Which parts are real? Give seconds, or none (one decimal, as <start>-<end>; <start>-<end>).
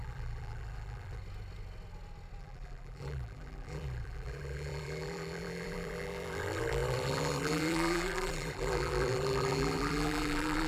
1.2-2.4